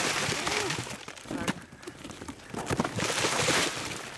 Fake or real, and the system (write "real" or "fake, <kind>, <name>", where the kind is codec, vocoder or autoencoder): fake, vocoder, BigVGAN v2